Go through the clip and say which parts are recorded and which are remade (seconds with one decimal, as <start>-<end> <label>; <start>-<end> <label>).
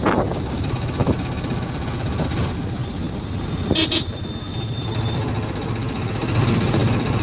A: 0.0-2.8 recorded; 2.8-3.5 remade; 3.5-7.2 recorded